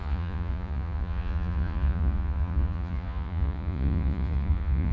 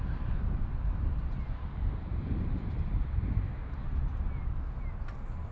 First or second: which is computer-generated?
first